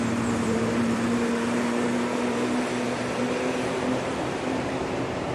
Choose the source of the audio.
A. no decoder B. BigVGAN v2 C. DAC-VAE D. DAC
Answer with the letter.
B